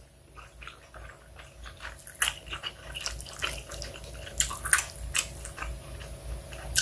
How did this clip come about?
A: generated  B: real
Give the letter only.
B